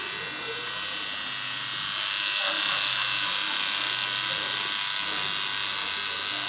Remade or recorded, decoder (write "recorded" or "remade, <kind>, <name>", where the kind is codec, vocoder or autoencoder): recorded